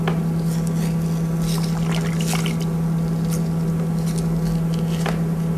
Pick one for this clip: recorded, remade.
recorded